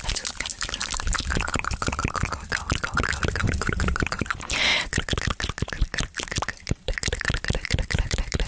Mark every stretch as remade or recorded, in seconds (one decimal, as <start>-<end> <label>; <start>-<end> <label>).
0.0-4.7 remade; 4.7-5.2 recorded; 5.2-8.5 remade